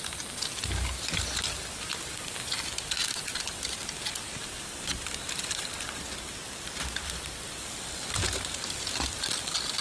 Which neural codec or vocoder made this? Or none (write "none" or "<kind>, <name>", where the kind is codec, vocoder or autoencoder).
none